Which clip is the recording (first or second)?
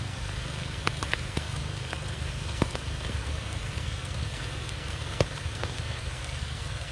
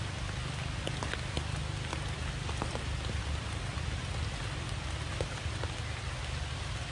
second